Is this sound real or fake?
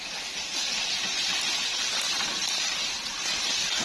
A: real